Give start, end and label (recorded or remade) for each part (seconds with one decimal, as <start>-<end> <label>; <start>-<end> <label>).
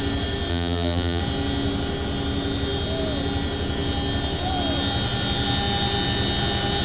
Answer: 0.0-0.5 recorded; 0.5-1.2 remade; 1.2-6.8 recorded